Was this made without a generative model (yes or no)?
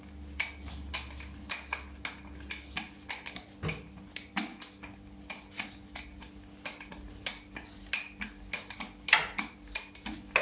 yes